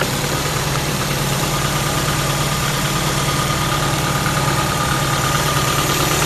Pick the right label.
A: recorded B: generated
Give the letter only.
B